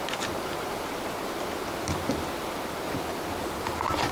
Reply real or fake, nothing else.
real